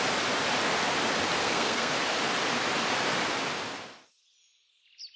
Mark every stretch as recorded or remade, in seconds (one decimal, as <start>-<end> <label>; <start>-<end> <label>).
0.0-1.4 recorded; 1.4-1.9 remade; 1.9-5.2 recorded